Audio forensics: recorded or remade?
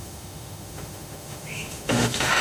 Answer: remade